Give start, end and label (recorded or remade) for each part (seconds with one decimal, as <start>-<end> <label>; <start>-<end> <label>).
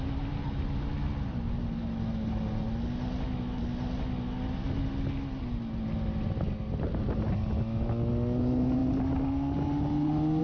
0.0-10.4 recorded